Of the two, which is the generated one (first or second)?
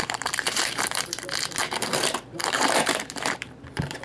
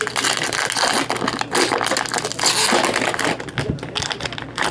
first